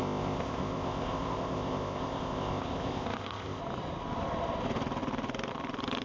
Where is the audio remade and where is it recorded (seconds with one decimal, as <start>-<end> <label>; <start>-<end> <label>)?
0.0-3.6 remade; 3.6-6.0 recorded